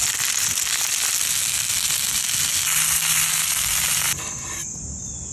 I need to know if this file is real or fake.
real